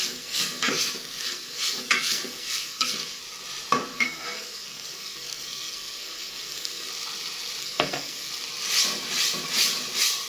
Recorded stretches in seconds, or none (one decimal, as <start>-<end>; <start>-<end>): 3.2-3.9; 6.9-7.6; 8.3-10.3